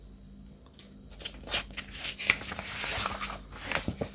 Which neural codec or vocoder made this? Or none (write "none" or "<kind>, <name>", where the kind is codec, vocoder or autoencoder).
none